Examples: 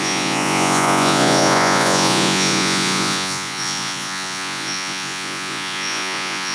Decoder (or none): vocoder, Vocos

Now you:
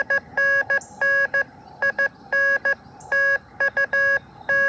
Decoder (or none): none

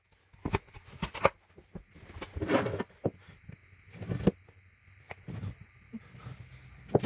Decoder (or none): none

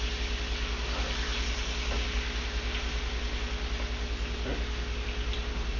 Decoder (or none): none